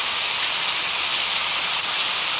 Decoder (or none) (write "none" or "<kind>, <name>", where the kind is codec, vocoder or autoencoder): none